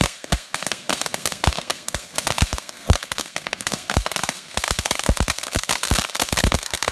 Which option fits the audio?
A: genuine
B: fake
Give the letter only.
B